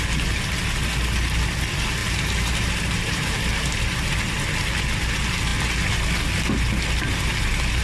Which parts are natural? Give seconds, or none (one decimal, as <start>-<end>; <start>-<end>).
0.0-2.0; 3.4-7.8